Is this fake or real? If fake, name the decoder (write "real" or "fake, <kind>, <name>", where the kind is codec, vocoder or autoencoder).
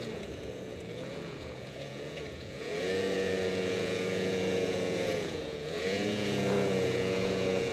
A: fake, vocoder, Vocos